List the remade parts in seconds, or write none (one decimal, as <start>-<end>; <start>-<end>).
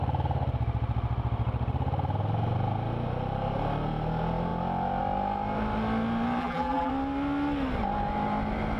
6.4-6.9